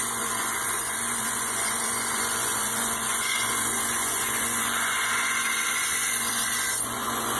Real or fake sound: fake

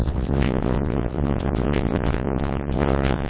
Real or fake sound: fake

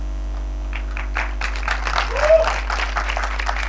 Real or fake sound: real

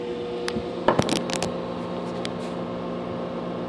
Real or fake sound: real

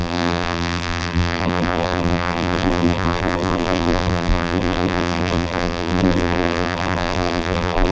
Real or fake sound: fake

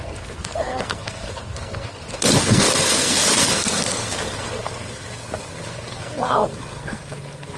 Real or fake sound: fake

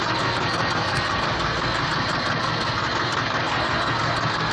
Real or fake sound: fake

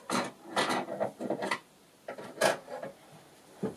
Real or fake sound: real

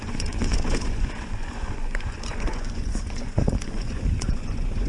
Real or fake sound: fake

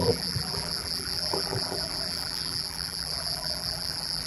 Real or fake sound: fake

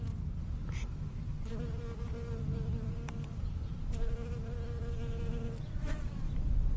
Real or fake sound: real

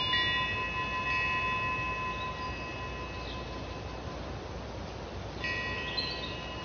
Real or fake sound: real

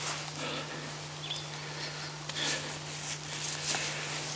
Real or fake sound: real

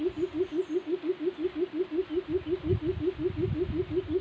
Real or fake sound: real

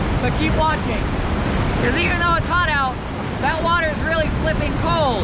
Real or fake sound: real